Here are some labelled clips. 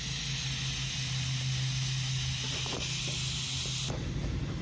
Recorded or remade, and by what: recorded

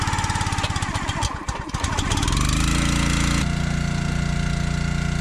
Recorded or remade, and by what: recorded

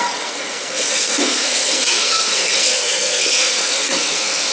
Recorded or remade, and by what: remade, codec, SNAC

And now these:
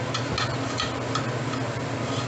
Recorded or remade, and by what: recorded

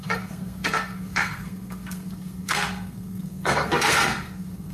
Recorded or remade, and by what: remade, codec, SNAC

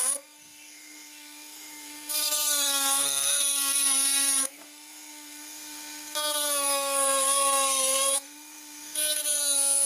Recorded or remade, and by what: remade, codec, SNAC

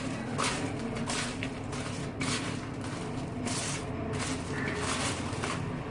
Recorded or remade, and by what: recorded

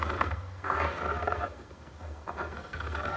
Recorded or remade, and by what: remade, codec, SNAC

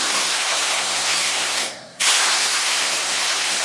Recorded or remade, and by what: remade, codec, SNAC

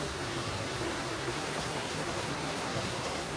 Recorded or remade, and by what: remade, codec, SNAC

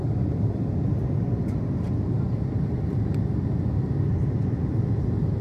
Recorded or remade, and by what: recorded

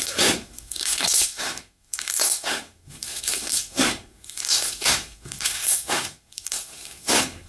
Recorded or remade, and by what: remade, codec, SNAC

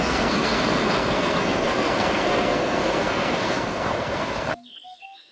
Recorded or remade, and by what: remade, codec, SNAC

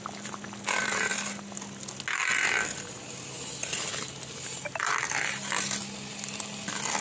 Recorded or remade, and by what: recorded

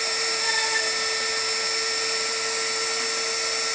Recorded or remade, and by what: recorded